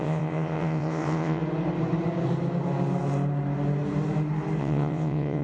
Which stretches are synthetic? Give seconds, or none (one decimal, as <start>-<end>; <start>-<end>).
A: 0.0-1.4; 4.6-5.4